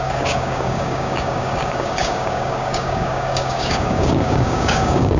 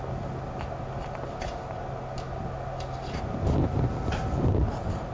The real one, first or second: second